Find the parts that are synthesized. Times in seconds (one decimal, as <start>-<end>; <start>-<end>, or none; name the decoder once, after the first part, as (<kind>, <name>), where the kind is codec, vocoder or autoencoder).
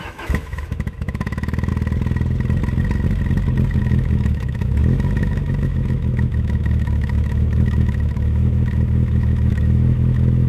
0.0-1.7 (autoencoder, DAC-VAE); 3.8-10.5